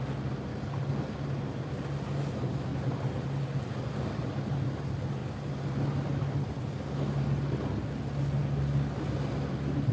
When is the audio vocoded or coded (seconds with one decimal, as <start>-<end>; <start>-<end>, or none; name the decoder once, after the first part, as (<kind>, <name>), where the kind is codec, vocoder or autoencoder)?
0.0-0.5 (vocoder, BigVGAN v2); 2.3-2.7; 3.7-8.4